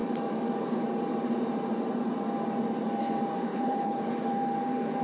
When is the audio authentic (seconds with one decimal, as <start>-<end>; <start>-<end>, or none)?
0.0-3.5; 4.1-5.0